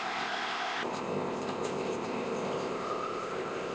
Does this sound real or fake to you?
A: fake